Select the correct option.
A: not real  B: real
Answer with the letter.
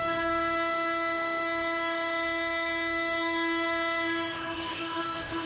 A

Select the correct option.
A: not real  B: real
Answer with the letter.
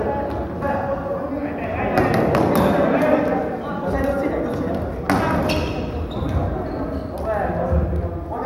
B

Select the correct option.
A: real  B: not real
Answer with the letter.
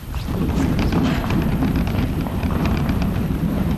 B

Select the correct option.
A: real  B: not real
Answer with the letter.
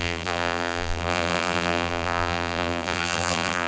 B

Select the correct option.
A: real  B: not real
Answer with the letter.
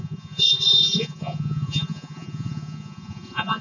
B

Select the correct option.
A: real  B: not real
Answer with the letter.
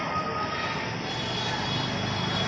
A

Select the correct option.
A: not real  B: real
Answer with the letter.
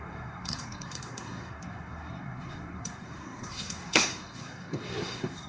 A